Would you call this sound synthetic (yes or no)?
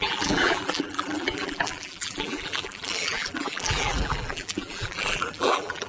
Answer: yes